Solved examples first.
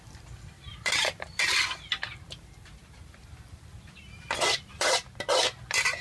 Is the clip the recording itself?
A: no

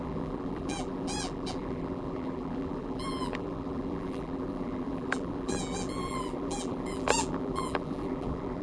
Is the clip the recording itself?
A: no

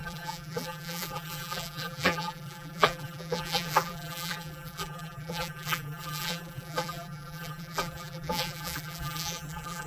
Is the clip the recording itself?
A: no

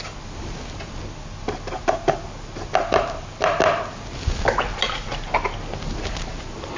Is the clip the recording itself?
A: yes